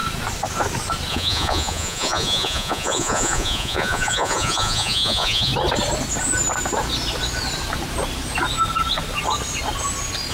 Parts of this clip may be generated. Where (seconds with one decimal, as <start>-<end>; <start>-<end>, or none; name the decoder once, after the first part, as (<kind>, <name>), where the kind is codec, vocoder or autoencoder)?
1.1-5.5 (vocoder, Vocos)